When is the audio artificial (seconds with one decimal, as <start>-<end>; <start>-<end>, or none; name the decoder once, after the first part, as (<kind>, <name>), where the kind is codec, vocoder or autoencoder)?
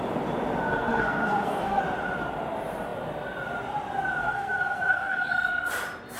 0.7-1.8 (codec, SNAC); 4.2-5.7